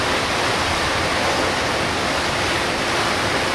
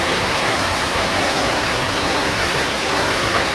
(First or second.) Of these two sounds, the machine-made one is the second